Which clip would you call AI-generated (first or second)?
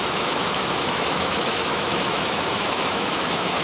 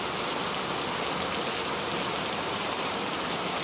first